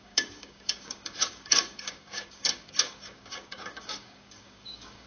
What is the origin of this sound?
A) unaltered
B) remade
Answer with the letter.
B